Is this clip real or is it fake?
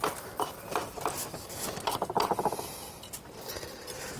real